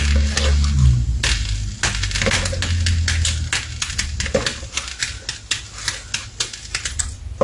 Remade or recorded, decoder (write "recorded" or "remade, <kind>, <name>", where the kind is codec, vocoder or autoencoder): recorded